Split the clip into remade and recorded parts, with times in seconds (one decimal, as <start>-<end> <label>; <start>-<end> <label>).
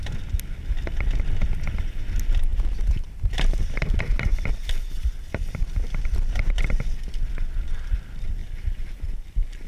0.0-2.5 recorded; 2.5-7.3 remade; 7.3-8.4 recorded; 8.4-9.2 remade; 9.2-9.7 recorded